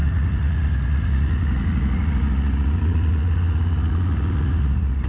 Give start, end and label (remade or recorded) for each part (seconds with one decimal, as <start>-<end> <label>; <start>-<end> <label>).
0.0-5.1 remade